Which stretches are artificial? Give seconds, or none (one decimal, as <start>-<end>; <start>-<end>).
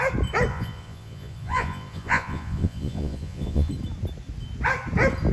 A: 0.5-3.7